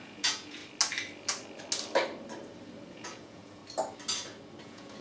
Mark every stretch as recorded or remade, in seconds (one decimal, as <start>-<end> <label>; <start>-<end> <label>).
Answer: 0.0-0.6 remade; 0.6-2.9 recorded; 2.9-3.6 remade; 3.6-4.6 recorded; 4.6-5.0 remade